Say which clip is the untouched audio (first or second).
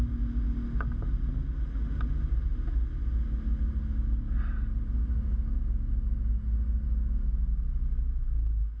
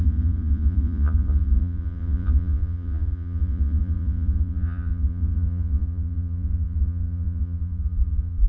first